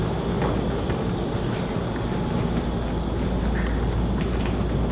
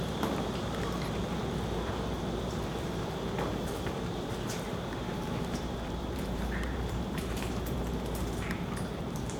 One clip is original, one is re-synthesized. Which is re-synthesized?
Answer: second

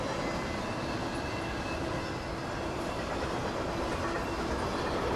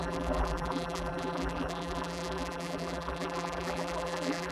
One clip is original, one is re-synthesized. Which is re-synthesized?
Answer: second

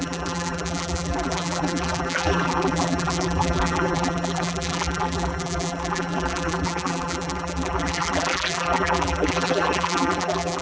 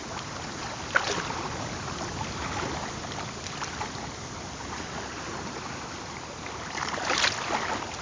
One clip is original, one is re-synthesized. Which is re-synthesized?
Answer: first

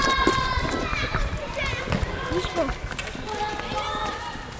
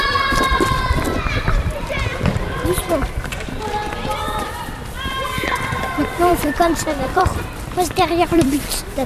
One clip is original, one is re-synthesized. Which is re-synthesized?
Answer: second